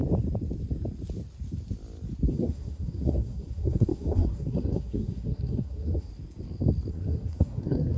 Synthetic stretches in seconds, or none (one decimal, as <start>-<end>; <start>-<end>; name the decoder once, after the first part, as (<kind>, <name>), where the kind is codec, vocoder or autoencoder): 2.3-6.1 (codec, SNAC); 6.9-8.0